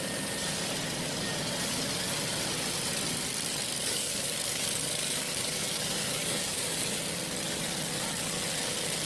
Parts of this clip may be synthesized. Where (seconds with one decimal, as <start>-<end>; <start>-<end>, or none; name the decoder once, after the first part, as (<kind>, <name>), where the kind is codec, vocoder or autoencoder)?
3.8-7.0 (codec, DAC)